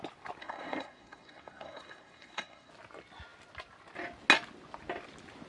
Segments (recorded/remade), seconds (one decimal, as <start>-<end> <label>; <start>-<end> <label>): 0.0-0.4 recorded; 0.4-2.7 remade; 2.7-5.5 recorded